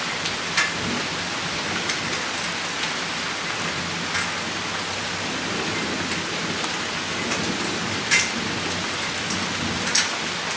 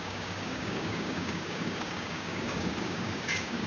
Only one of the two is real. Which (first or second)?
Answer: first